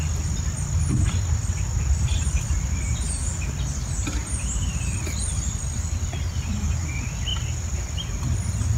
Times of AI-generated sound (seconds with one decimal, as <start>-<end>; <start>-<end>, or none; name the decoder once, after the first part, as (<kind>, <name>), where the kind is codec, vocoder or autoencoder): 3.2-6.1 (vocoder, BigVGAN v2)